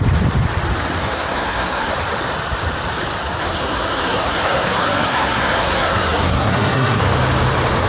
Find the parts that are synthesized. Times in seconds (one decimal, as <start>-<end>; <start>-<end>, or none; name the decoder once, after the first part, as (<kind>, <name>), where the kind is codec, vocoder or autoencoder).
1.0-1.9 (codec, SNAC); 3.2-7.0